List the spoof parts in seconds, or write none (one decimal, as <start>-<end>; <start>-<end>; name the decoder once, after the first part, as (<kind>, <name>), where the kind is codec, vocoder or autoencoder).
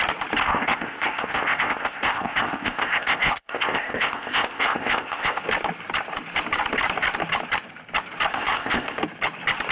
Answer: 0.4-5.4 (codec, ZipCodec); 8.3-9.0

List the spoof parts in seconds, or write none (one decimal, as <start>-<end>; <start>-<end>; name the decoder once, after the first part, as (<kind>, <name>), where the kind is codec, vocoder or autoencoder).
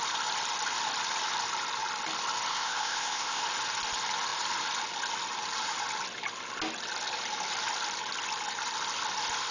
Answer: 2.5-3.4 (codec, ZipCodec)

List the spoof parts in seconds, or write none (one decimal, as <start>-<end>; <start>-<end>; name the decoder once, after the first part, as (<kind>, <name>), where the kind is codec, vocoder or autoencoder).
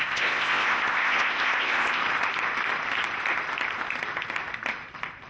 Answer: 0.0-2.0 (codec, ZipCodec)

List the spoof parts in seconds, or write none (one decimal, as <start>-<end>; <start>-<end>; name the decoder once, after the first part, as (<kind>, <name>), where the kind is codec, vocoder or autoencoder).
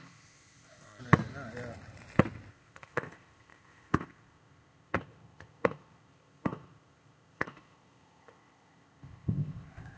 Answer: 0.0-1.0 (codec, ZipCodec); 2.5-10.0